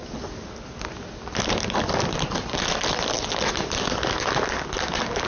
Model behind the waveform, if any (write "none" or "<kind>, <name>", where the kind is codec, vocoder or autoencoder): none